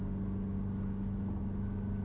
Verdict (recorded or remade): recorded